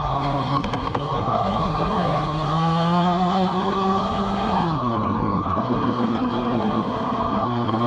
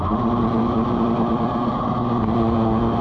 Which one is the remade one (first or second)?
first